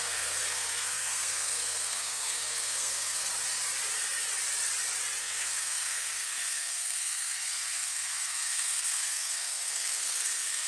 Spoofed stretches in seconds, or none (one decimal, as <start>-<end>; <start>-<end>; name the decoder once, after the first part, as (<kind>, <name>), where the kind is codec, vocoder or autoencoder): 0.0-3.3 (codec, SNAC); 5.2-10.7